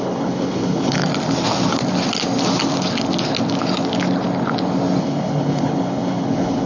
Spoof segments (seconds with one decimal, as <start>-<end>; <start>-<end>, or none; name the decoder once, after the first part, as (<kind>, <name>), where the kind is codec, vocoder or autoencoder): 0.0-1.0 (codec, HILCodec); 5.0-6.7